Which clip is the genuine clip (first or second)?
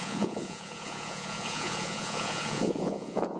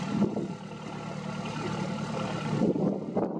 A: second